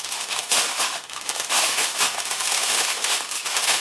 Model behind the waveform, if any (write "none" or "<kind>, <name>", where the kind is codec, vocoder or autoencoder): autoencoder, DAC-VAE